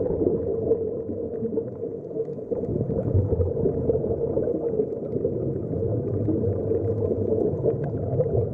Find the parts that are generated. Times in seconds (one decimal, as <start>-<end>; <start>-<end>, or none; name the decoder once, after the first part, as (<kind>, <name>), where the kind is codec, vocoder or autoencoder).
none

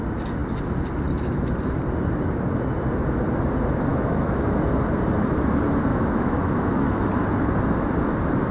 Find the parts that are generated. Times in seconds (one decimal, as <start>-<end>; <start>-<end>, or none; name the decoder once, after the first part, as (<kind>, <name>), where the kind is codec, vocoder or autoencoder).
3.9-4.6 (autoencoder, DAC-VAE); 5.9-7.1

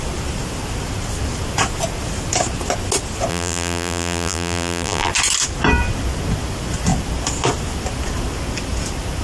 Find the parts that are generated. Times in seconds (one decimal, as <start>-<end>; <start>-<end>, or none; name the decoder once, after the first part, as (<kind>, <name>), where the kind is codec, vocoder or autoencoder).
3.3-5.1 (vocoder, BigVGAN v2)

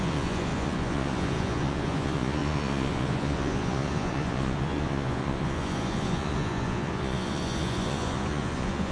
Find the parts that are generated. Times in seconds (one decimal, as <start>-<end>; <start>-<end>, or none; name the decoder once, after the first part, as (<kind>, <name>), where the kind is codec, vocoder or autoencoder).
0.0-8.9 (vocoder, Vocos)

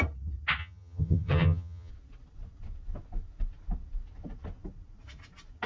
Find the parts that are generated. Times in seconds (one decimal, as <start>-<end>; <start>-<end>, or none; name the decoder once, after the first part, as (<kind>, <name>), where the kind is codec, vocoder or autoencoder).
0.6-1.9 (vocoder, HiFi-GAN)

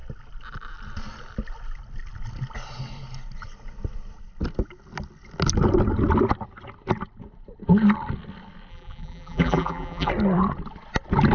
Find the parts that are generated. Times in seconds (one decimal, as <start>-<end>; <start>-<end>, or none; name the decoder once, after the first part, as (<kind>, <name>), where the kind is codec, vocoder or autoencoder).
8.7-10.1 (vocoder, BigVGAN v2)

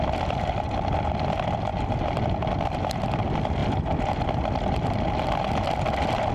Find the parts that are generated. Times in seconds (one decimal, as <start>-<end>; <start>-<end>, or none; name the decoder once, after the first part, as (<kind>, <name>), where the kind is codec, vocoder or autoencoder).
none

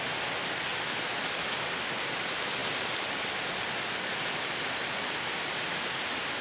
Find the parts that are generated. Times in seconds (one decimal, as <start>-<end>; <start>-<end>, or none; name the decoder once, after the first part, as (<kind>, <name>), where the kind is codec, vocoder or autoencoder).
none